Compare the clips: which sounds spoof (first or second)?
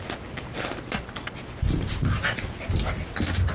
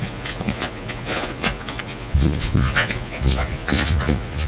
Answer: second